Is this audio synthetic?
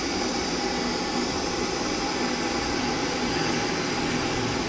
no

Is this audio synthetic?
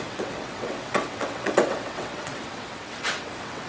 yes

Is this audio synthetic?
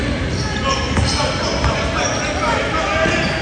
no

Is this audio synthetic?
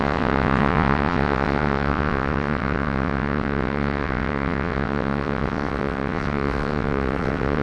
yes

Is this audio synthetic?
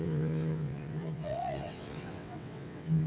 yes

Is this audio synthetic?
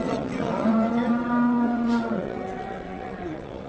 yes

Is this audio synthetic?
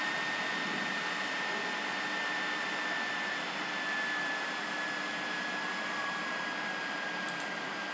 no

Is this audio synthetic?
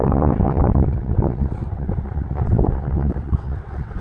yes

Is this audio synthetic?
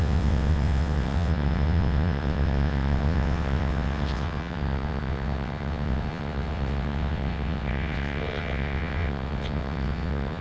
yes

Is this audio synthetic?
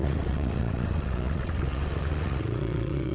yes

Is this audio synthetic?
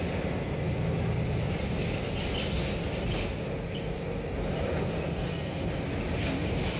no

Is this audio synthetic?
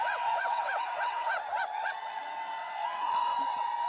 yes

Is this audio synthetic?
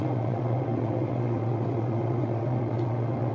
yes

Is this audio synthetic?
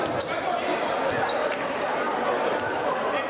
no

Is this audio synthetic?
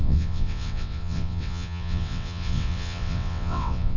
yes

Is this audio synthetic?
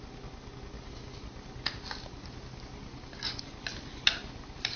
no